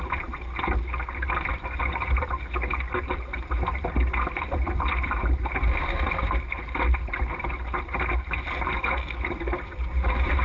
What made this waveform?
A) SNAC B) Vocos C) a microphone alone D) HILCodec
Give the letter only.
C